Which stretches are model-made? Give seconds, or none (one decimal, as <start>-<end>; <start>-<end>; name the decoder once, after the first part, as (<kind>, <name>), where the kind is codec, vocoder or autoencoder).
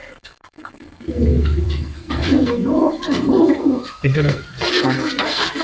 0.0-5.6 (codec, SNAC)